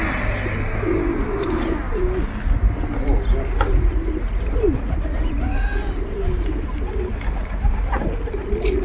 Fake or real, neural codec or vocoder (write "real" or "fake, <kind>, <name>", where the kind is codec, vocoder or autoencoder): real